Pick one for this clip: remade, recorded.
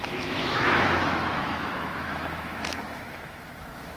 remade